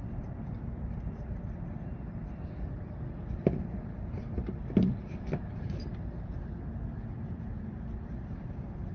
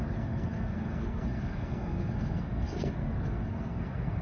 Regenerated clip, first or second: second